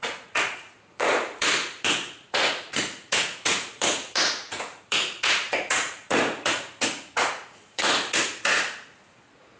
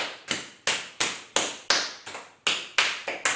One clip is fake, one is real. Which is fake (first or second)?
first